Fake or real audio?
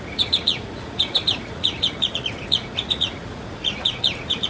fake